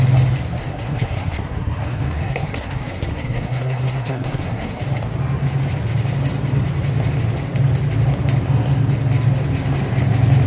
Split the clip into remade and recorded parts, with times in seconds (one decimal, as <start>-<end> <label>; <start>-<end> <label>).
0.0-0.6 recorded; 0.6-4.8 remade; 4.8-10.5 recorded